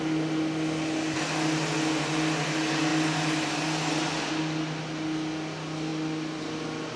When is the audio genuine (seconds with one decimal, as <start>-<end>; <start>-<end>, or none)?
0.0-7.0